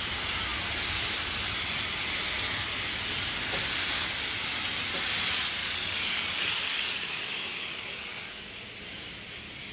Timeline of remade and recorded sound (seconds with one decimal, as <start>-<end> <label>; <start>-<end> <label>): 0.0-5.6 recorded; 5.6-8.4 remade; 8.4-9.7 recorded